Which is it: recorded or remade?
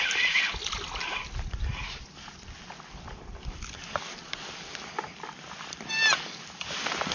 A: recorded